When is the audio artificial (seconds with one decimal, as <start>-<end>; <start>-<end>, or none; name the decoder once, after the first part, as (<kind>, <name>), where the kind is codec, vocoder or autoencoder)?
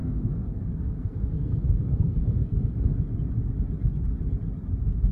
0.0-3.0 (codec, SNAC)